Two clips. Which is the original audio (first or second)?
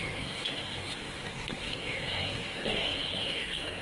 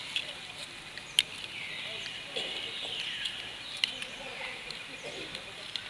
second